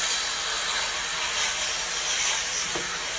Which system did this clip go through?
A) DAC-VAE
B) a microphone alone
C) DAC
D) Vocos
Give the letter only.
B